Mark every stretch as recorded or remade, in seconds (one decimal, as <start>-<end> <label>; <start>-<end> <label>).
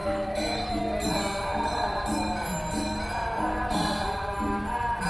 0.0-0.8 remade; 0.8-5.1 recorded